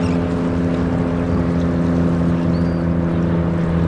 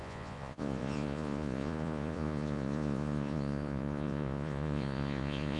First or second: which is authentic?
first